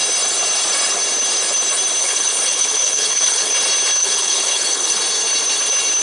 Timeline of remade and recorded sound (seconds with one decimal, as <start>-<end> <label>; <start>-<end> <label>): 0.0-2.0 recorded; 2.0-3.5 remade; 3.5-4.0 recorded; 4.0-5.0 remade; 5.0-6.0 recorded